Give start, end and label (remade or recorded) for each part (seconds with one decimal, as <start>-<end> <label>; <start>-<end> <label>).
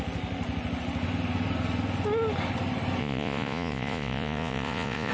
0.0-3.0 recorded; 3.0-5.1 remade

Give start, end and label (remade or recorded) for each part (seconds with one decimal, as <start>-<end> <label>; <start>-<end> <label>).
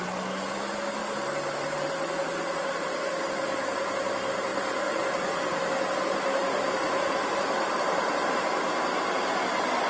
0.0-1.0 recorded; 1.0-3.2 remade; 3.2-6.4 recorded; 6.4-7.7 remade; 7.7-9.9 recorded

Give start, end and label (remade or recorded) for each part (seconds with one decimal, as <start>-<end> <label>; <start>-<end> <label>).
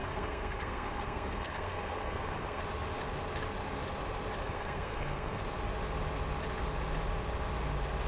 0.0-2.6 remade; 2.6-4.4 recorded; 4.4-5.4 remade; 5.4-8.1 recorded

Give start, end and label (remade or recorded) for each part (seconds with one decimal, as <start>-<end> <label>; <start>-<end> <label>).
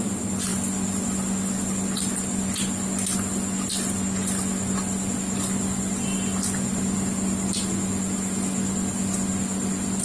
0.0-10.0 recorded